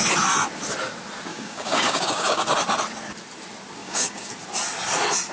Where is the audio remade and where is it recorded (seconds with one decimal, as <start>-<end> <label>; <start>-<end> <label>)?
0.0-1.3 recorded; 1.3-2.4 remade; 2.4-3.8 recorded; 3.8-4.3 remade; 4.3-5.3 recorded

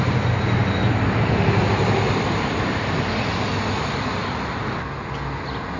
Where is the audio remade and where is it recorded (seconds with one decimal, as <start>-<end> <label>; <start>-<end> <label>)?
0.0-5.8 recorded

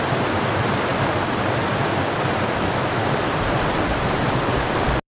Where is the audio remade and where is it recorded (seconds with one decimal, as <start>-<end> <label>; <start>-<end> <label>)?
0.0-5.2 recorded